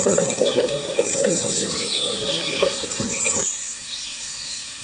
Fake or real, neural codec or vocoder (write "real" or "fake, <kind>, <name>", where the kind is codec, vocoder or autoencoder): fake, codec, SNAC